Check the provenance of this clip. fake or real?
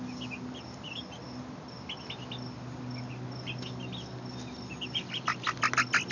real